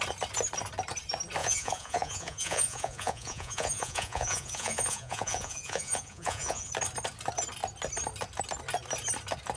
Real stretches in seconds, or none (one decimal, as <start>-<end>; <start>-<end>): 0.0-1.4; 6.7-9.6